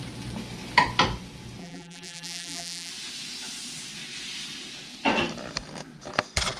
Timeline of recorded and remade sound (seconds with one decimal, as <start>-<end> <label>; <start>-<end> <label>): 0.0-1.6 recorded; 1.6-2.9 remade; 2.9-6.6 recorded